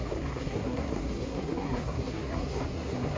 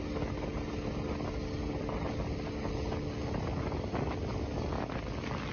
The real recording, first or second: second